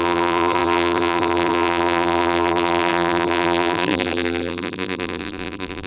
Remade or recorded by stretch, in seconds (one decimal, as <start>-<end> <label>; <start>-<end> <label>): 0.0-5.9 remade